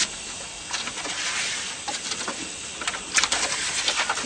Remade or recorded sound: recorded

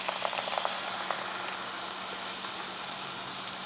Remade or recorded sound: recorded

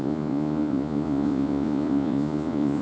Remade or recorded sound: remade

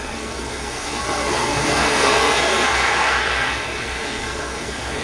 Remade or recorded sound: remade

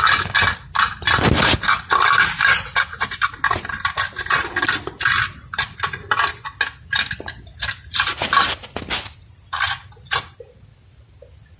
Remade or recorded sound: recorded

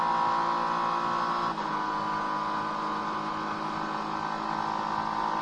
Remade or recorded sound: recorded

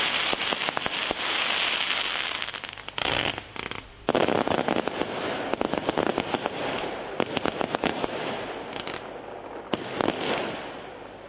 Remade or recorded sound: recorded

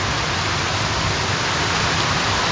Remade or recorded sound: recorded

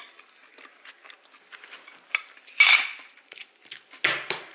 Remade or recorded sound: recorded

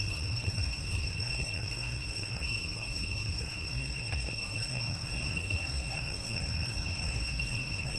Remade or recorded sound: remade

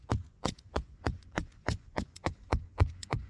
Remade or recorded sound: remade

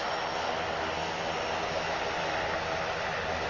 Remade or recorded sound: recorded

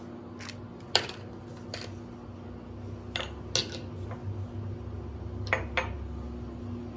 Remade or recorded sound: recorded